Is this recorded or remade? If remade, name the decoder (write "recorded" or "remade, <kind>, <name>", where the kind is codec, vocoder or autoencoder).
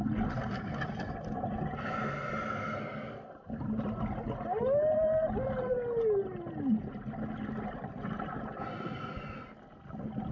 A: recorded